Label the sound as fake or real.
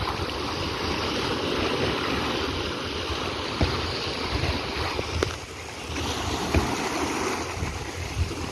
real